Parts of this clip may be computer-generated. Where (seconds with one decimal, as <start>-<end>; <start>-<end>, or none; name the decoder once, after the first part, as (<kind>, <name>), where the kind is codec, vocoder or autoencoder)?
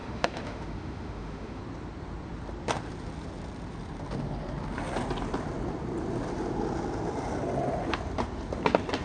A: 0.0-1.6 (autoencoder, DAC-VAE)